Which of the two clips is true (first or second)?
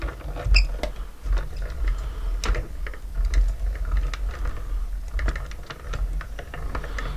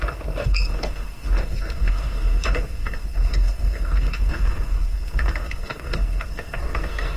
first